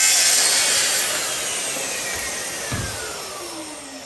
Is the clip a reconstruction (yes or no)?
no